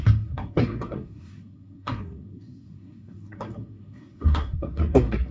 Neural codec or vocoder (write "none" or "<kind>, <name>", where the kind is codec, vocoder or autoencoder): codec, SNAC